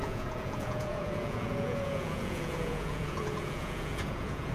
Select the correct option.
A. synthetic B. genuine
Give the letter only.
A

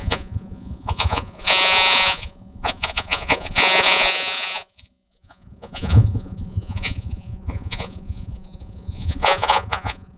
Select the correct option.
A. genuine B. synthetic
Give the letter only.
B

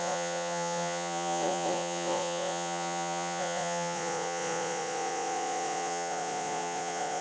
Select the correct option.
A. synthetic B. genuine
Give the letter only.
A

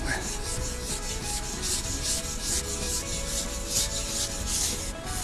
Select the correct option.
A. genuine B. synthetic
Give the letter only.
A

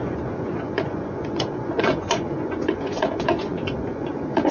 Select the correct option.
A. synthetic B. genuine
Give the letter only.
A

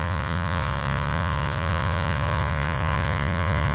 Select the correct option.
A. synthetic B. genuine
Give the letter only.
A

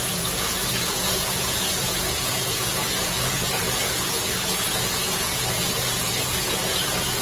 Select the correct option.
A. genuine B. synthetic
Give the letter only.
B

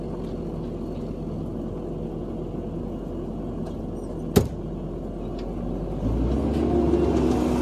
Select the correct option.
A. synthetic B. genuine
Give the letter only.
B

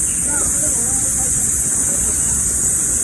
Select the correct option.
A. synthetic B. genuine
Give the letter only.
A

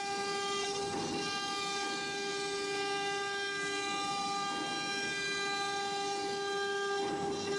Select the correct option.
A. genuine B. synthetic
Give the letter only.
A